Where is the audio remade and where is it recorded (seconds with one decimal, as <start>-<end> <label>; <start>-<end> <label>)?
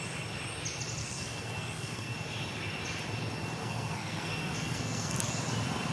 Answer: 0.0-1.0 recorded; 1.0-2.1 remade; 2.1-3.6 recorded; 3.6-5.3 remade; 5.3-5.9 recorded